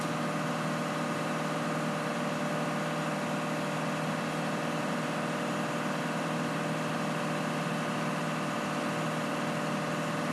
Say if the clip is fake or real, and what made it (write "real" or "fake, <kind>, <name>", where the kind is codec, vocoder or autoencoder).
real